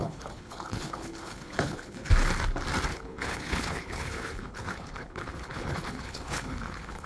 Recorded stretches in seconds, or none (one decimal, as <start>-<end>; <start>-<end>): 2.1-2.9